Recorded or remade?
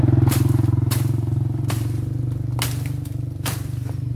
recorded